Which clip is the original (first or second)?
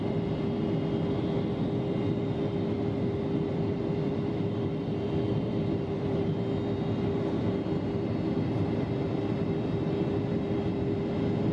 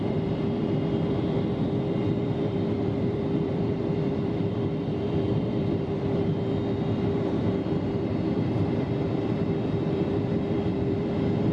first